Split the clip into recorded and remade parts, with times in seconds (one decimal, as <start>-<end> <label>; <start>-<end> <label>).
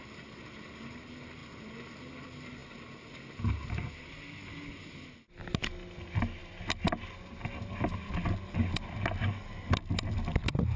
0.0-10.8 recorded